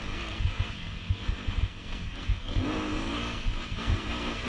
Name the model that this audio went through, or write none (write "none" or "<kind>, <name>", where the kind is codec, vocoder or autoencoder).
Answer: codec, SNAC